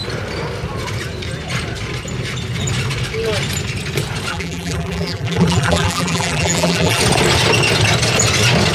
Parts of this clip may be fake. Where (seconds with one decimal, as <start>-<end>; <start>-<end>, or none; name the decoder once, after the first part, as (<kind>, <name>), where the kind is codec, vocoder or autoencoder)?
4.3-7.0 (vocoder, BigVGAN v2)